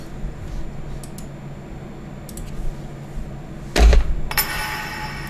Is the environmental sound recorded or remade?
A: recorded